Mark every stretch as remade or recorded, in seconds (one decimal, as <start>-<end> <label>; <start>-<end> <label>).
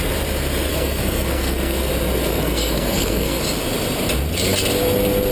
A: 0.0-0.7 recorded; 0.7-1.9 remade; 1.9-2.3 recorded; 2.3-3.4 remade; 3.4-5.3 recorded